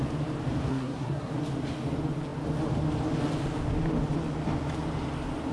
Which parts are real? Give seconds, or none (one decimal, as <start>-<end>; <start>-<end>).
0.0-0.7; 1.3-5.5